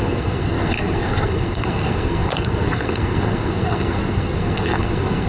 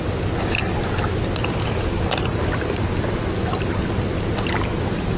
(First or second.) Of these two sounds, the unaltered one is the second